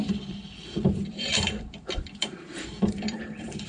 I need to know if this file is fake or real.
fake